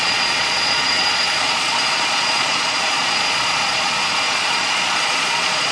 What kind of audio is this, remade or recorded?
remade